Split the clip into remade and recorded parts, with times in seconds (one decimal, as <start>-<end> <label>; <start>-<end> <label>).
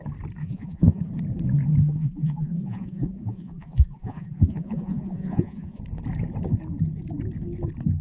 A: 0.0-0.4 recorded; 0.4-1.0 remade; 1.0-2.0 recorded; 2.0-5.8 remade; 5.8-8.0 recorded